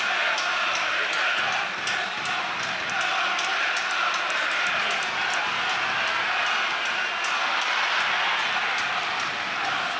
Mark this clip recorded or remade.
recorded